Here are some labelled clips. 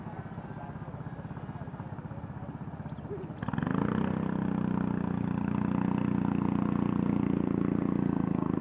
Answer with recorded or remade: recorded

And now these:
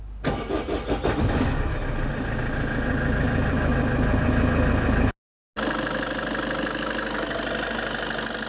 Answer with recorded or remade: recorded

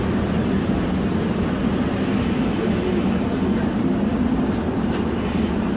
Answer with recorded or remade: recorded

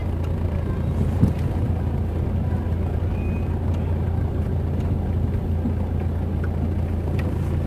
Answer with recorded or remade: recorded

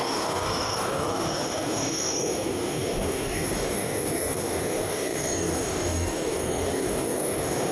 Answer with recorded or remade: remade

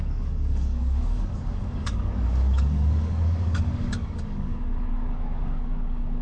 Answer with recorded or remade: remade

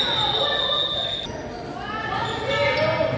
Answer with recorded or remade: recorded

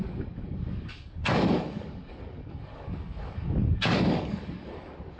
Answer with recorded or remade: remade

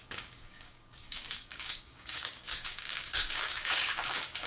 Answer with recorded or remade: remade